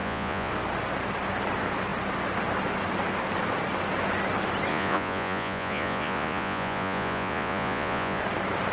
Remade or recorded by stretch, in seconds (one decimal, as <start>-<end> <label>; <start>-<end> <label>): 0.0-0.5 remade; 0.5-4.7 recorded; 4.7-8.2 remade; 8.2-8.7 recorded